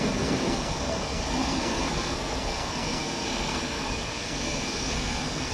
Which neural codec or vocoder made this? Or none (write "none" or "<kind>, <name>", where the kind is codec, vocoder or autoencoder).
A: codec, SNAC